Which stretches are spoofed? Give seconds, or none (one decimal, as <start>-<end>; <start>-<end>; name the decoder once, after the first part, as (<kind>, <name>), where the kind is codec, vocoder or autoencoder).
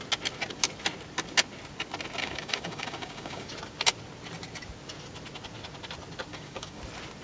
2.2-3.5 (codec, DAC); 6.3-6.8